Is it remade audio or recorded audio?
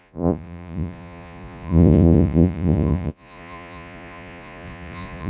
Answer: remade